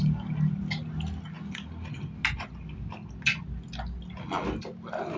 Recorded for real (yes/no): yes